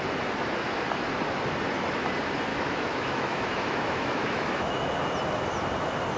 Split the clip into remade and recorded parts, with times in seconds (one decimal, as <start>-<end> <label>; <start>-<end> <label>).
0.0-2.5 recorded; 2.5-4.9 remade; 4.9-6.2 recorded